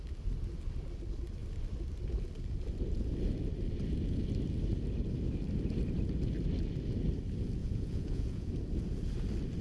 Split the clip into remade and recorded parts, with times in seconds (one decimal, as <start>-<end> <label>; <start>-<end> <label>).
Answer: 0.0-7.6 recorded; 7.6-8.5 remade; 8.5-9.6 recorded